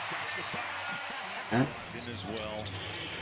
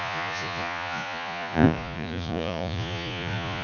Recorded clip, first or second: first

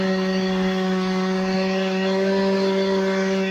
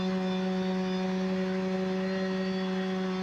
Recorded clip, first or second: second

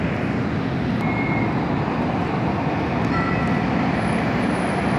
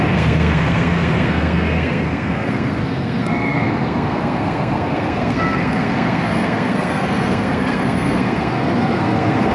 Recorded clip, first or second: first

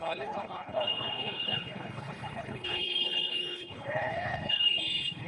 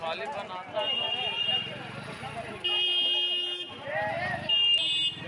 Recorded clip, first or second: second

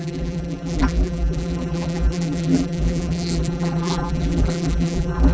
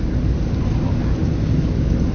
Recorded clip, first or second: second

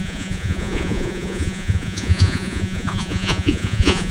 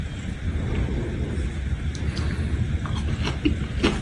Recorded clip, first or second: second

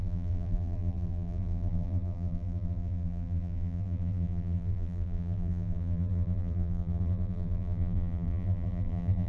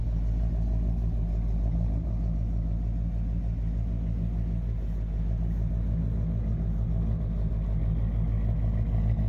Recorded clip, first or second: second